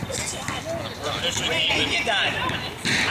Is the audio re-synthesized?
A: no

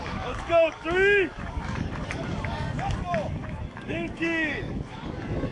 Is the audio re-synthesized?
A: yes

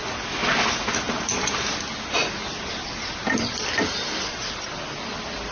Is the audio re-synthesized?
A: no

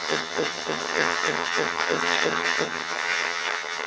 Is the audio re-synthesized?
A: yes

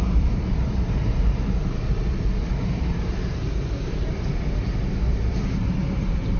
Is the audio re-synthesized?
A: yes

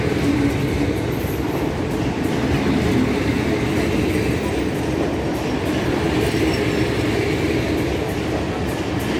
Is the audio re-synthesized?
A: no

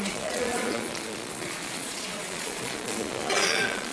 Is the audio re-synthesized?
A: yes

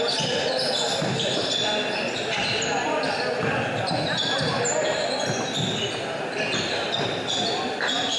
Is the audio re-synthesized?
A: no